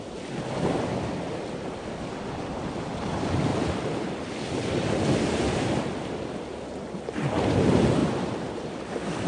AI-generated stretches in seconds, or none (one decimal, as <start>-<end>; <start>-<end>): none